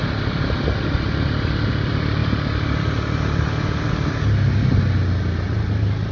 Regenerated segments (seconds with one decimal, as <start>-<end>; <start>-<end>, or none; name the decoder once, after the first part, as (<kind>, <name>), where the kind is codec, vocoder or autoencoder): none